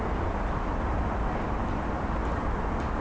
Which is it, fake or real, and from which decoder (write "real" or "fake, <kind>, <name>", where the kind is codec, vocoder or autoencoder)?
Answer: real